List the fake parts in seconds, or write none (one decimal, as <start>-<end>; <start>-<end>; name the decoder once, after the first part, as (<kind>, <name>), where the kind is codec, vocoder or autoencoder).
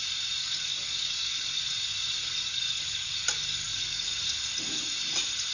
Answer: 0.4-1.6 (codec, DAC); 2.2-3.1; 3.6-4.1